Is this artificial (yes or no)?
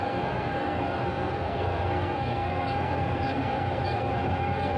yes